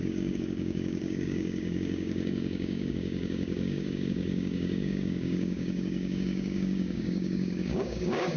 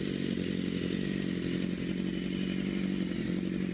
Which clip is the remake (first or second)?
first